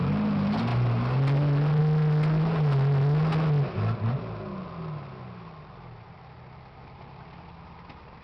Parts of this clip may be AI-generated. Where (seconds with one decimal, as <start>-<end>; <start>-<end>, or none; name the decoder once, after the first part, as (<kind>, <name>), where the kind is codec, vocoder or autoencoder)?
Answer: none